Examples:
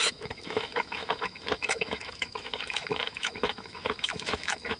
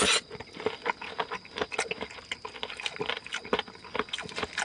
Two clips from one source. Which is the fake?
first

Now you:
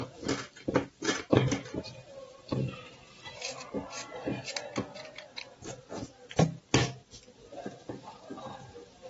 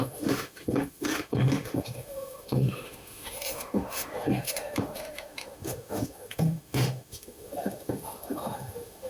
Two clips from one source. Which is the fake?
second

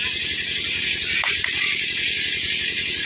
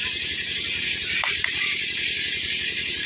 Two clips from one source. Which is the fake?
second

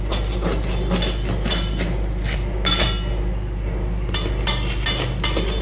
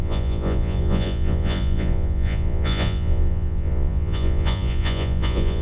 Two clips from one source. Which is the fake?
second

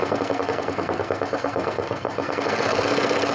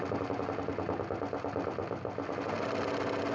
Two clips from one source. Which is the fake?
first